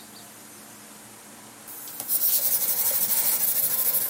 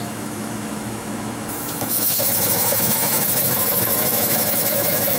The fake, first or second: second